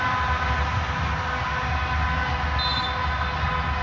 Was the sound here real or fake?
real